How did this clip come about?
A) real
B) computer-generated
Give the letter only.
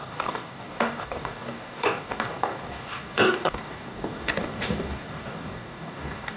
B